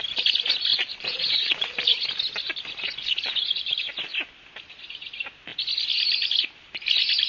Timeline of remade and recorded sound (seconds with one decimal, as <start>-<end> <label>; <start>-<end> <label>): 0.0-0.7 recorded; 0.7-1.7 remade; 1.7-7.3 recorded